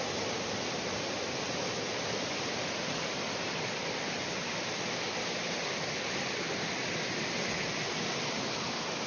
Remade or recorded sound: recorded